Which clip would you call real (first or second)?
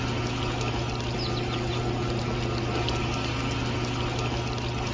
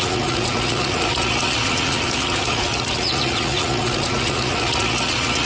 first